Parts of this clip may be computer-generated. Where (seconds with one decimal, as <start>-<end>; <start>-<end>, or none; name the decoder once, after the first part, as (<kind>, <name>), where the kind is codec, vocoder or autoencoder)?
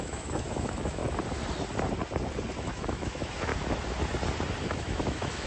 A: 0.0-1.0 (autoencoder, DAC-VAE); 2.6-3.5; 4.6-5.5